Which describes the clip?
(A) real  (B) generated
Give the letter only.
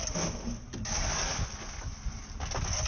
A